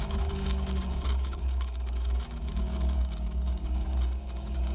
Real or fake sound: fake